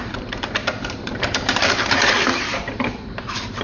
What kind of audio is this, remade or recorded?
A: remade